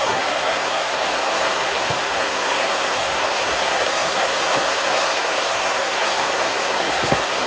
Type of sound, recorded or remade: remade